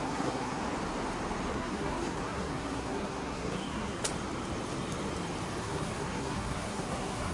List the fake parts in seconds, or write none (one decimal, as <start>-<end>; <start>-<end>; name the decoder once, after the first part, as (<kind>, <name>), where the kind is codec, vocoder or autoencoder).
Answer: 0.0-0.6 (codec, SNAC); 1.5-4.0; 5.6-7.3